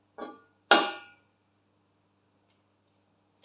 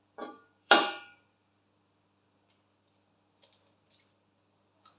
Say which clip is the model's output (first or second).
second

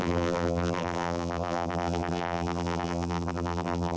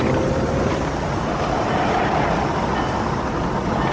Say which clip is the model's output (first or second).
first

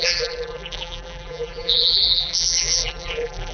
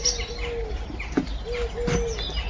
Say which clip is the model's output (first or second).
first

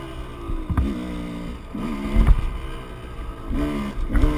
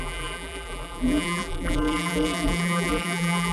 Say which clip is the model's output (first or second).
second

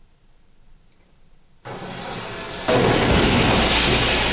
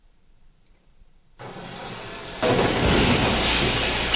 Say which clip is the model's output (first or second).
second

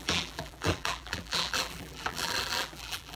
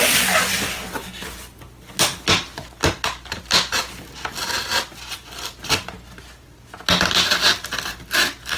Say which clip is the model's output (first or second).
first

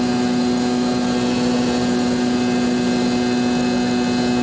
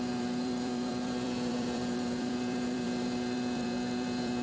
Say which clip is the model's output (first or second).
second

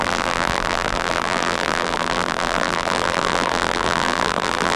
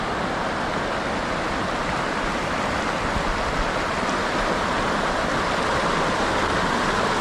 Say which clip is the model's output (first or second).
first